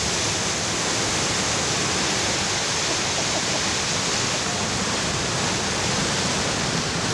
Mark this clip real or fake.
real